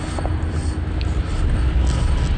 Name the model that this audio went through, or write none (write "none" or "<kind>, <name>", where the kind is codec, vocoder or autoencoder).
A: none